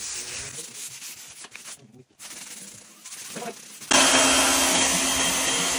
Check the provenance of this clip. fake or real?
real